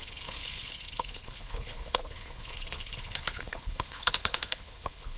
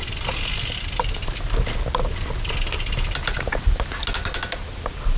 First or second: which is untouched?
second